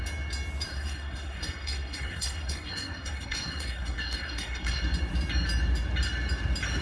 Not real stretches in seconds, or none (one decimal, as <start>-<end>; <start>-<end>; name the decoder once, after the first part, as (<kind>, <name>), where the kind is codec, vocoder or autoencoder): 0.7-4.8 (codec, SNAC)